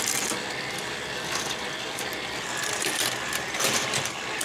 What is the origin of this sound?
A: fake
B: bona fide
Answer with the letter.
A